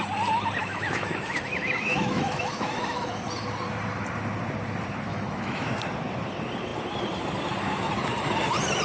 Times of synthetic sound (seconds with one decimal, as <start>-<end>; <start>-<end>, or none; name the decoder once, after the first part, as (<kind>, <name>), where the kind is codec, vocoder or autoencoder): 0.6-3.2 (autoencoder, DAC-VAE); 5.1-5.7